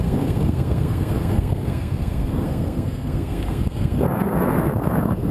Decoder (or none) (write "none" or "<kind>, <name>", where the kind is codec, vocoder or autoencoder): codec, SNAC